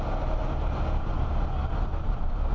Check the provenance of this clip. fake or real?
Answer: real